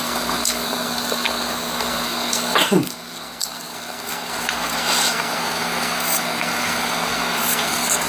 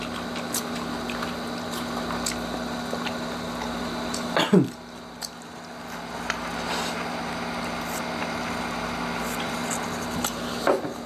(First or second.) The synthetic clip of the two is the first